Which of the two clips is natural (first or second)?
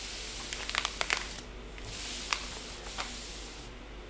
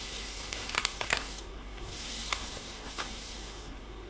first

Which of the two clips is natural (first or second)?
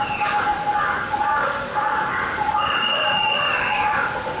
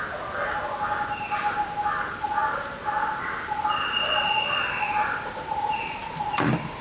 second